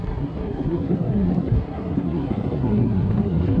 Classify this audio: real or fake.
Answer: fake